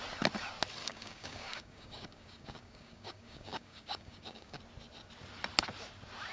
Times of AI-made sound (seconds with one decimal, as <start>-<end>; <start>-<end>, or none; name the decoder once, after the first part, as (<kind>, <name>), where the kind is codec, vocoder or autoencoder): 0.8-4.6 (codec, DAC)